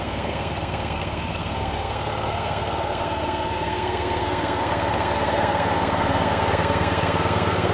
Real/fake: fake